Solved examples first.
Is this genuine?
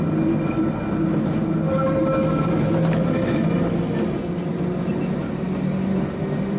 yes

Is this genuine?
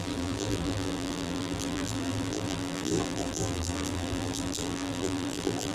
no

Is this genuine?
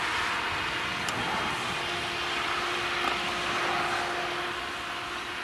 yes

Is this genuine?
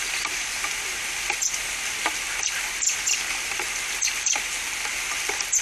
no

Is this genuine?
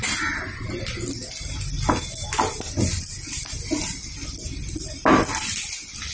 yes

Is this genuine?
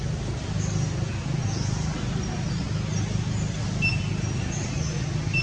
yes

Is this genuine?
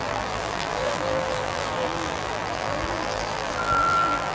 no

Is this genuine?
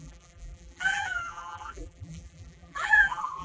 no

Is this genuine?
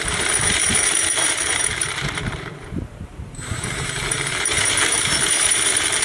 no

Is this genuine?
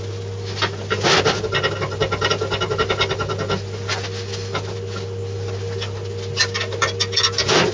yes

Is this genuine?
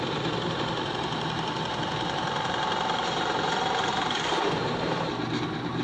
no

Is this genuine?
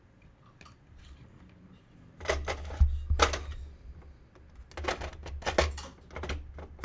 yes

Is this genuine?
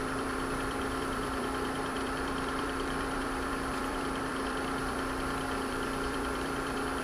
no